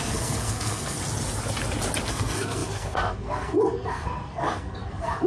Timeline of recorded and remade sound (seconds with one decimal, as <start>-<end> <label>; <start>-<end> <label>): 0.0-1.0 remade; 1.0-2.1 recorded; 2.1-5.3 remade